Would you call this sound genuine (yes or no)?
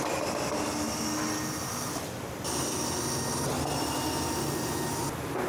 yes